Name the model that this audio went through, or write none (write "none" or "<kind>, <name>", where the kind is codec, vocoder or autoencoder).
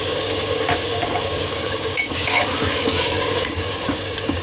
codec, DAC